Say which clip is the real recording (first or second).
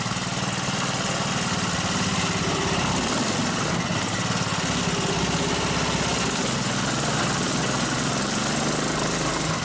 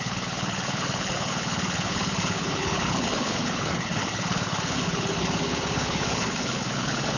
first